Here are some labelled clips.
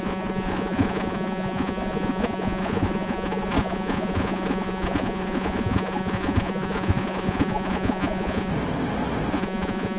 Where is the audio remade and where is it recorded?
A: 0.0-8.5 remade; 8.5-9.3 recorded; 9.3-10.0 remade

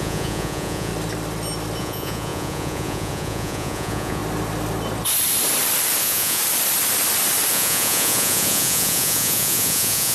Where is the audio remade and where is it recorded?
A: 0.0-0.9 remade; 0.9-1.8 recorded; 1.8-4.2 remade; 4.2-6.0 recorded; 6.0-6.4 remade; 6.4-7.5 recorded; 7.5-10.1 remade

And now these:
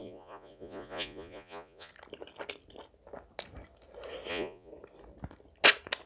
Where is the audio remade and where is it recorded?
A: 0.0-1.9 remade; 1.9-4.3 recorded; 4.3-4.7 remade; 4.7-6.1 recorded

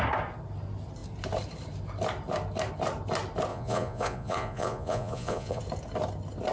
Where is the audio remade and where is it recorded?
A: 0.0-3.5 recorded; 3.5-5.6 remade; 5.6-6.5 recorded

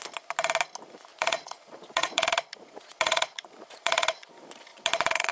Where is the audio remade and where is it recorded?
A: 0.0-1.1 recorded; 1.1-4.3 remade; 4.3-4.7 recorded; 4.7-5.3 remade

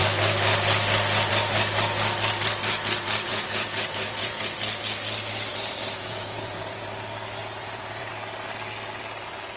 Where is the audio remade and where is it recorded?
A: 0.0-3.3 recorded; 3.3-4.4 remade; 4.4-5.5 recorded; 5.5-6.9 remade; 6.9-7.4 recorded; 7.4-8.1 remade; 8.1-9.6 recorded